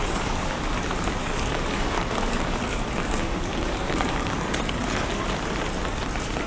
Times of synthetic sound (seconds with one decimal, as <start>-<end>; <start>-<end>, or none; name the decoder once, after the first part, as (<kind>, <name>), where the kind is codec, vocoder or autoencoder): 0.0-0.6 (codec, DAC); 1.2-5.1